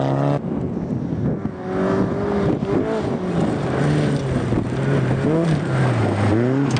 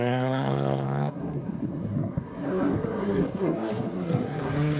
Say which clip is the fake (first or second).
second